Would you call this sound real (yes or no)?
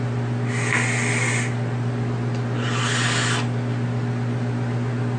yes